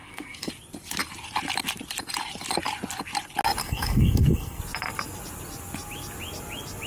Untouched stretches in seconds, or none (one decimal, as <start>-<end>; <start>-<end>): 0.5-3.6; 4.6-6.9